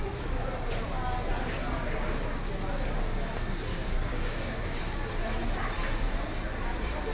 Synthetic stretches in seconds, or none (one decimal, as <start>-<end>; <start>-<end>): 3.7-4.8